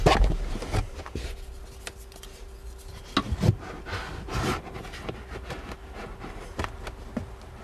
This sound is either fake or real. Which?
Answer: real